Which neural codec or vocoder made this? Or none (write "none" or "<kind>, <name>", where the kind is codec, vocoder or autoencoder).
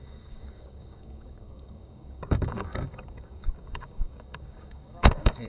codec, DAC